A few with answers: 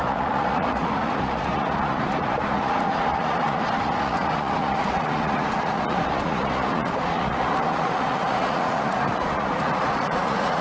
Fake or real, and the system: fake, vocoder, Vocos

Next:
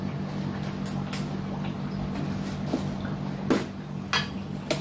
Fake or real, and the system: real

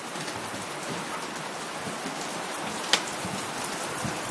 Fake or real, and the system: real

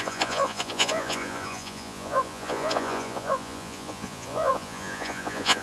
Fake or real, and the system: fake, vocoder, Vocos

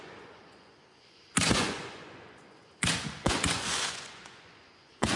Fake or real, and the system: fake, vocoder, Vocos